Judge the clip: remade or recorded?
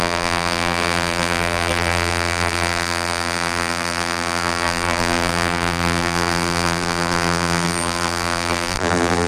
remade